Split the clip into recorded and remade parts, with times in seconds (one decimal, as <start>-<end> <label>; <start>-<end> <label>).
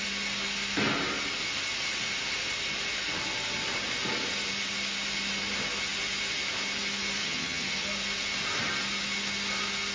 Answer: 0.0-7.2 recorded; 7.2-7.9 remade; 7.9-9.9 recorded